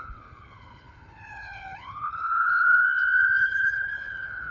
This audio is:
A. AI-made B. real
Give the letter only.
A